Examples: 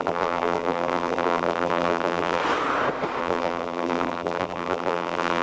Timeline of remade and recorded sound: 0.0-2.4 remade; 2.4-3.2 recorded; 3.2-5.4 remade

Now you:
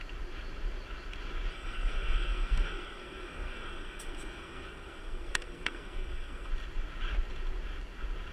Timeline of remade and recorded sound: 0.0-1.5 recorded; 1.5-6.5 remade; 6.5-8.3 recorded

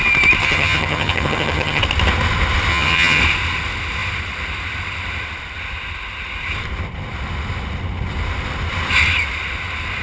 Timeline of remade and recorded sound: 0.0-0.4 recorded; 0.4-1.8 remade; 1.8-2.7 recorded; 2.7-3.2 remade; 3.2-10.0 recorded

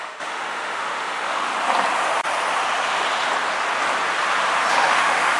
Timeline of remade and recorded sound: 0.0-1.5 remade; 1.5-4.7 recorded; 4.7-5.4 remade

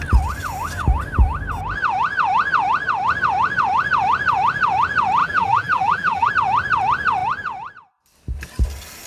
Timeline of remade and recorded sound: 0.0-5.2 recorded; 5.2-6.3 remade; 6.3-9.1 recorded

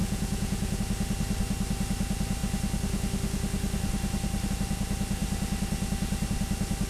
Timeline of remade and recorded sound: 0.0-0.8 remade; 0.8-6.9 recorded

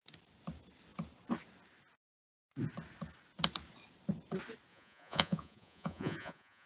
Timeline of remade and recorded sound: 0.0-4.7 recorded; 4.7-6.7 remade